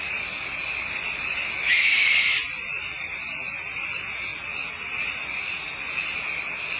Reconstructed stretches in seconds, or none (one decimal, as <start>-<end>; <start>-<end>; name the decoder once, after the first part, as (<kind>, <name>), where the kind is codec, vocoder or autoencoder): none